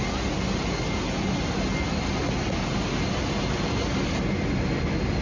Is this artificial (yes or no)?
no